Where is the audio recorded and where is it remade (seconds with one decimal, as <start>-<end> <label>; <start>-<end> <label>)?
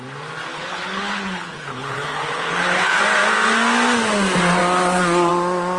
0.0-0.5 recorded; 0.5-3.0 remade; 3.0-5.8 recorded